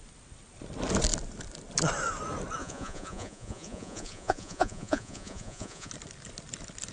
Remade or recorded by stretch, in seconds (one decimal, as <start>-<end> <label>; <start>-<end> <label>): 0.0-2.6 recorded; 2.6-5.9 remade; 5.9-6.9 recorded